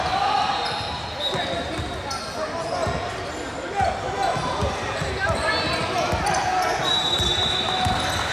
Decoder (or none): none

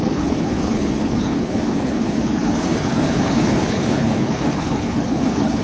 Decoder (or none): codec, HILCodec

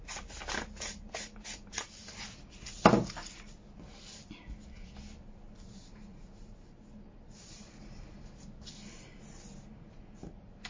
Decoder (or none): none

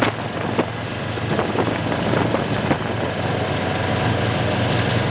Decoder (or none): none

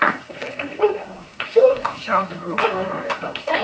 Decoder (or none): codec, SNAC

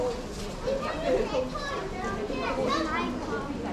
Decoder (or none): none